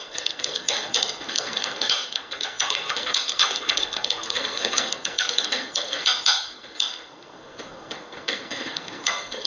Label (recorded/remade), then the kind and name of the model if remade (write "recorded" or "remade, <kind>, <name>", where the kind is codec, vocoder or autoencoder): remade, codec, SNAC